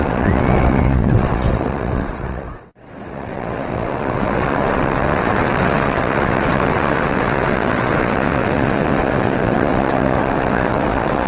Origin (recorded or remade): remade